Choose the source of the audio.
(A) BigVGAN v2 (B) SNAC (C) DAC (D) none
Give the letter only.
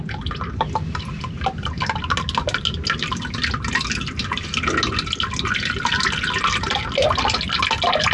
D